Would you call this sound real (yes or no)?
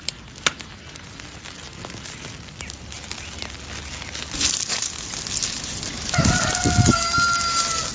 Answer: yes